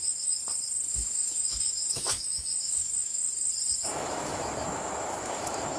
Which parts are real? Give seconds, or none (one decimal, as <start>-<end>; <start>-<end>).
0.4-0.9; 3.2-3.8